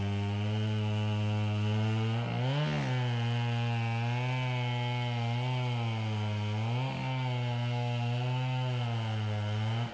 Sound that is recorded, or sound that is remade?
recorded